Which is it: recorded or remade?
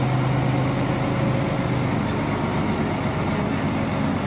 recorded